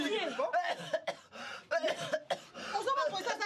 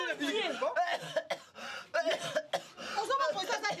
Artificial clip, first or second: first